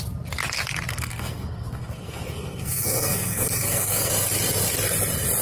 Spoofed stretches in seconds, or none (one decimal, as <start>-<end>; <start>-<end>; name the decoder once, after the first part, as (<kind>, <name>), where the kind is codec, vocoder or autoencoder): 0.9-4.1 (codec, SNAC)